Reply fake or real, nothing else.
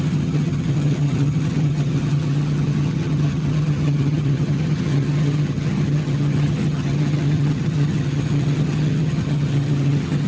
fake